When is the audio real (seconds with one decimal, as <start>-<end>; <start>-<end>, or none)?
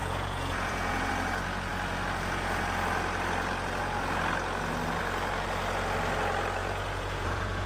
1.1-6.6